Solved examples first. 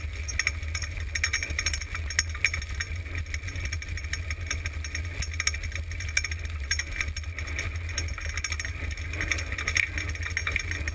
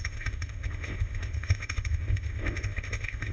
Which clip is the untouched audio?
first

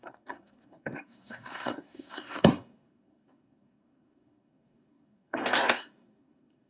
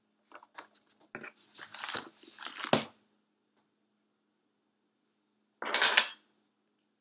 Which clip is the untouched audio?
second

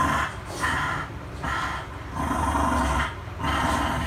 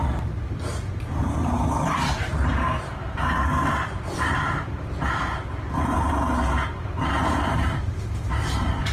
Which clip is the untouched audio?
first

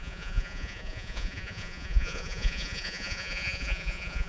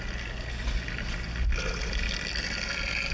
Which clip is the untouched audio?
second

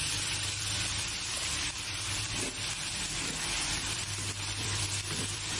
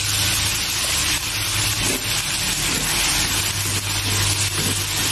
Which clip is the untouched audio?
second